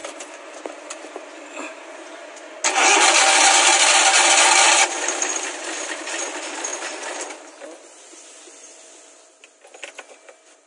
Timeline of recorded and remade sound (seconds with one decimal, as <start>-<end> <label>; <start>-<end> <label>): 0.0-10.7 recorded